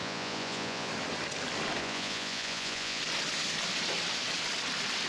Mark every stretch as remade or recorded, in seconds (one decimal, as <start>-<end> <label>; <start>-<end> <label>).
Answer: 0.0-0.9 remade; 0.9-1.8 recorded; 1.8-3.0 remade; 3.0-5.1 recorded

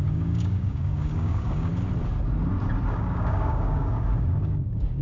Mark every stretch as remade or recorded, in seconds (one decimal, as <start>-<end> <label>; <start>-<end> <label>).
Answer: 0.0-1.7 remade; 1.7-2.9 recorded; 2.9-5.0 remade

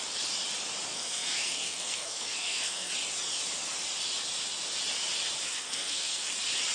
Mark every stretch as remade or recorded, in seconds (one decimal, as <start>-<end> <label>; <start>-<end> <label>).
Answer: 0.0-0.9 recorded; 0.9-2.9 remade; 2.9-5.5 recorded; 5.5-6.3 remade; 6.3-6.7 recorded

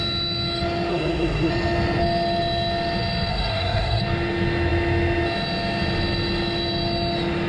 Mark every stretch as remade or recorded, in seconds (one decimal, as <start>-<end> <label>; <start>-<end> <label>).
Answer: 0.0-0.9 recorded; 0.9-1.5 remade; 1.5-3.3 recorded; 3.3-4.0 remade; 4.0-7.5 recorded